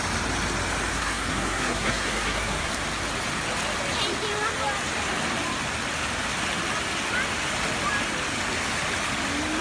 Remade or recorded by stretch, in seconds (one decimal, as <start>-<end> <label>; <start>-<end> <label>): 0.0-0.9 recorded; 0.9-2.7 remade; 2.7-9.6 recorded